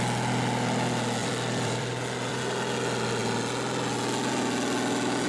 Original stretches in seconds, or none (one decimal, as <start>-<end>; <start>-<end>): 0.0-1.2; 2.4-5.3